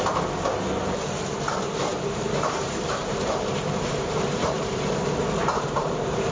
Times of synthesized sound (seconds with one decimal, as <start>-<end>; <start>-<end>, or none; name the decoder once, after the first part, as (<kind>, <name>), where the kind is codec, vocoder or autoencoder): 1.9-4.9 (vocoder, BigVGAN v2); 5.4-6.3